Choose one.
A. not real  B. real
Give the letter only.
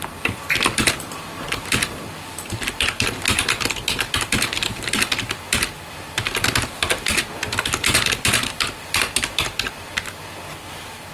B